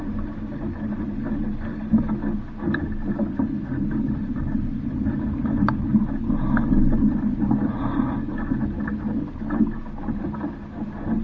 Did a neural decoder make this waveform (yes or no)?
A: no